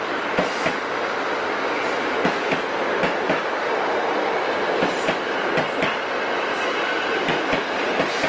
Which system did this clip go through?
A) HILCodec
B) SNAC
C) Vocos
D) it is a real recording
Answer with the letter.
D